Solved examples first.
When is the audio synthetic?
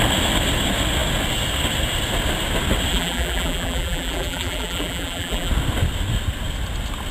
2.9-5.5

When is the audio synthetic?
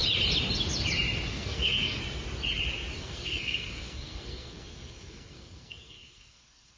1.3-2.0; 3.0-6.8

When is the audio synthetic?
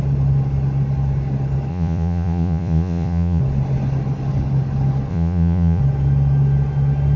1.7-3.4; 5.1-5.8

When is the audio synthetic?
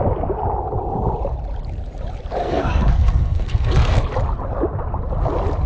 2.4-4.0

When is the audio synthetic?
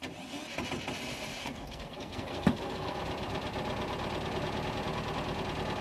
1.4-3.0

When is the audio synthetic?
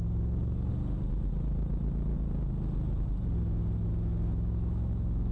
0.0-0.7; 3.9-5.3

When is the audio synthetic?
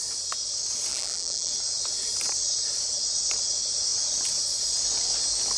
0.9-1.5